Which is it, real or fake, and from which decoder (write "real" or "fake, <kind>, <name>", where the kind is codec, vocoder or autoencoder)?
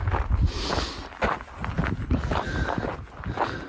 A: real